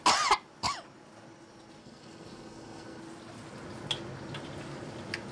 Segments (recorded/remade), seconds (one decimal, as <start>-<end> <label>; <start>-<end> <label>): 0.0-1.8 recorded; 1.8-3.0 remade; 3.0-5.3 recorded